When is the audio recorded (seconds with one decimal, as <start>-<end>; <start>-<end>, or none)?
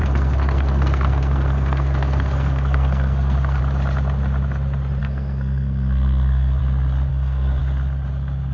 3.6-5.0; 6.6-7.1; 7.6-8.5